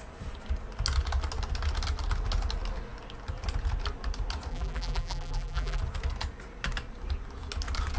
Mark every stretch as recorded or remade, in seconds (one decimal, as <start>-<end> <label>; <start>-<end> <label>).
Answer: 0.0-4.5 recorded; 4.5-5.8 remade; 5.8-8.0 recorded